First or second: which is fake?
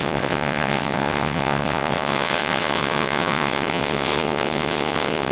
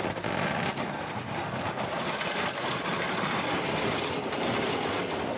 first